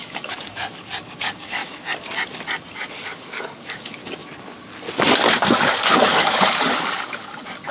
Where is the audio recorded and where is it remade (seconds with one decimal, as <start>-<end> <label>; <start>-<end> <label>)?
0.0-1.6 remade; 1.6-2.7 recorded; 2.7-4.0 remade; 4.0-5.7 recorded; 5.7-7.7 remade